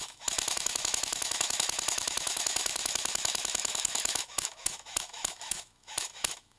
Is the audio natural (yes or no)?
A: no